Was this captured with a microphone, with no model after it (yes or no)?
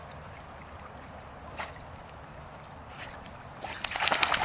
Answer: yes